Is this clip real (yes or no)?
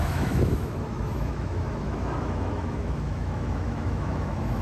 no